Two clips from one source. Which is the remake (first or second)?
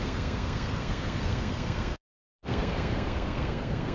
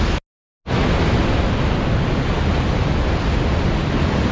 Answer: first